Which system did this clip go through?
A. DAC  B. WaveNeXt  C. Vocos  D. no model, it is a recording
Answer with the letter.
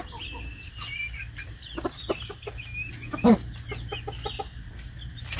D